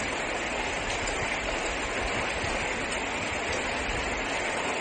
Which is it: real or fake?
real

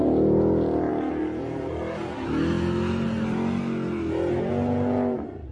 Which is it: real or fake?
real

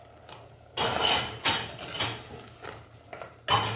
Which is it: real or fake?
real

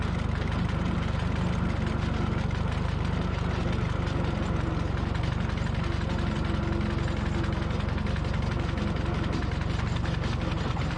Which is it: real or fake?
real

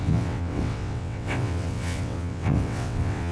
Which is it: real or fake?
fake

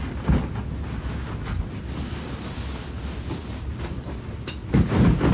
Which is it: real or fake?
real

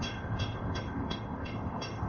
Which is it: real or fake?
fake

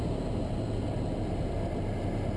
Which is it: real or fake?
real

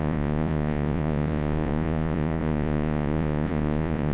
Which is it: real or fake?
fake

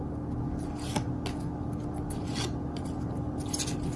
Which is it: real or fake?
real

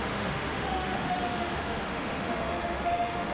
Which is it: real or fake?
fake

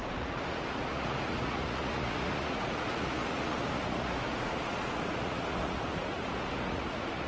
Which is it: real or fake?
fake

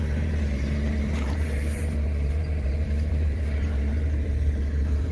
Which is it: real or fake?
fake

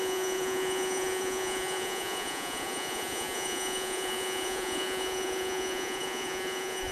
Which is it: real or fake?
fake